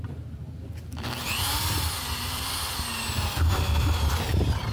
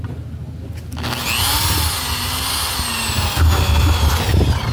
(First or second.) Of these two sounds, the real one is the second